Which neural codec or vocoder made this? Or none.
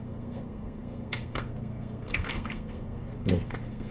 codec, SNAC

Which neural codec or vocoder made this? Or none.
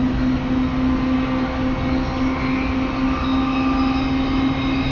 none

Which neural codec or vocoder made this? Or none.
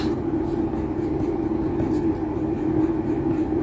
none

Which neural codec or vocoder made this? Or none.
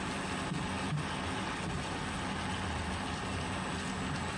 none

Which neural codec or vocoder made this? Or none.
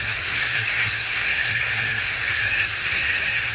codec, SNAC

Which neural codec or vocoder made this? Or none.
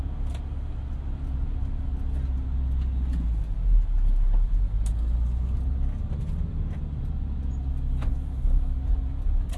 none